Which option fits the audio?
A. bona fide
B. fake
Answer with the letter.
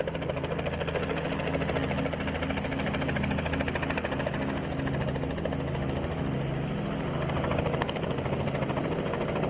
A